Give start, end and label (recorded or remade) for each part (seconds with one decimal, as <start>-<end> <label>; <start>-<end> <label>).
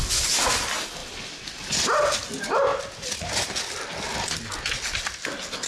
0.0-5.7 recorded